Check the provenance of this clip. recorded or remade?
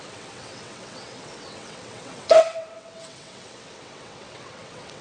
remade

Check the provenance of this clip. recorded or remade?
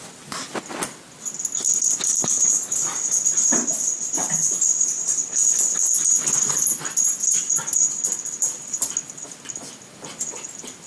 recorded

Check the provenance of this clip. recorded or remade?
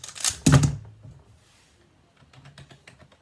recorded